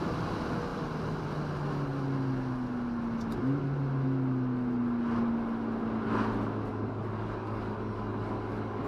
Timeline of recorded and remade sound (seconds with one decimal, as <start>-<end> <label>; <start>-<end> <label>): 0.0-6.7 recorded; 6.7-8.9 remade